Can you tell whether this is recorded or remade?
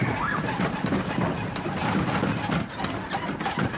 recorded